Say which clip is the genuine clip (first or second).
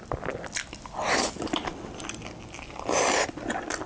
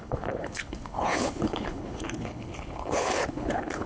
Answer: first